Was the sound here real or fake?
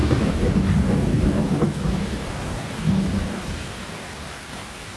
fake